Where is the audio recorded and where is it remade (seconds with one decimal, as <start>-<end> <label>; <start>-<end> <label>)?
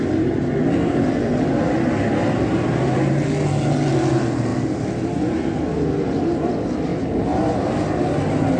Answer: 0.0-8.6 recorded